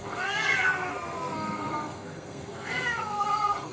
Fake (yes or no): yes